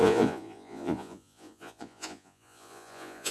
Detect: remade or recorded remade